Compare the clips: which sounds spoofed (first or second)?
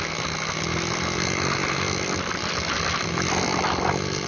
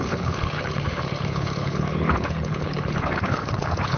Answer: second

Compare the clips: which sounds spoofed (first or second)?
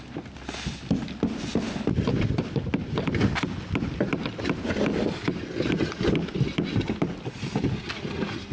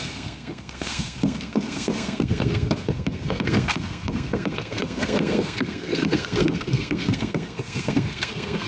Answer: second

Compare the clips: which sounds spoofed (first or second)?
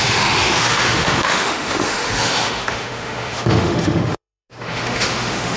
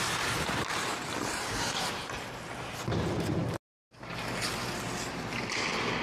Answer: first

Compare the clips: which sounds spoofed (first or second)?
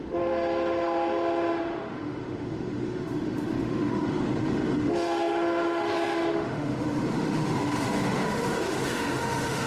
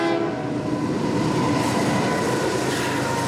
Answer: first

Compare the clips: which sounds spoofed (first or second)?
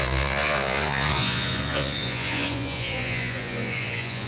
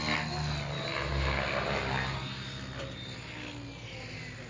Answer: first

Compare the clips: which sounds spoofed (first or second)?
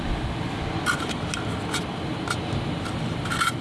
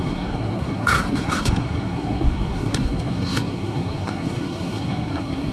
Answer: second